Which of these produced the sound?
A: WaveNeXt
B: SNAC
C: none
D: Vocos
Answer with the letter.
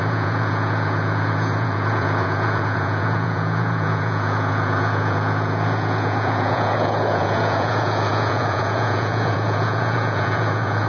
D